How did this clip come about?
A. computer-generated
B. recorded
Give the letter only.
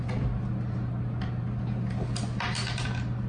B